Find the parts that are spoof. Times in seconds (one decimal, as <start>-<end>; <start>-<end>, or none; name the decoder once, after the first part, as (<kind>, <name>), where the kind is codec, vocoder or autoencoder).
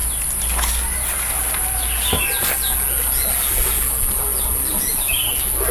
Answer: none